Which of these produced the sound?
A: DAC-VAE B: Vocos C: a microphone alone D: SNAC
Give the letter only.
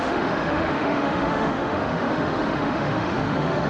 A